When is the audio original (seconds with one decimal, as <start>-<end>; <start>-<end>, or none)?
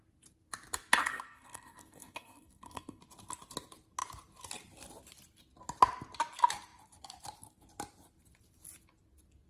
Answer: 0.0-1.0; 3.0-9.5